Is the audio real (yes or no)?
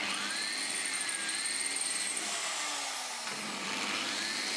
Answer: yes